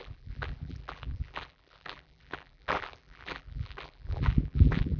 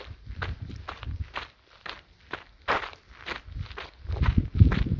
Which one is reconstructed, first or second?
first